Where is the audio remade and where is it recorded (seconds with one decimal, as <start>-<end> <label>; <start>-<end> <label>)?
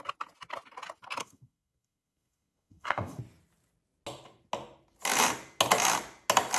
0.0-1.2 recorded; 1.2-3.2 remade; 3.2-6.6 recorded